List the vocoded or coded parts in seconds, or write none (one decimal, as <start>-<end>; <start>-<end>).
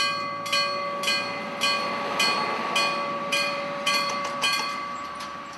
3.2-5.6